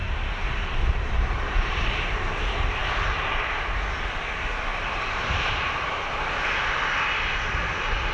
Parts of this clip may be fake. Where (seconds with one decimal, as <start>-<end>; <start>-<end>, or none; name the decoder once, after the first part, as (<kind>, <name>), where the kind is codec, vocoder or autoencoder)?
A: 0.0-2.4 (vocoder, BigVGAN v2); 4.7-6.3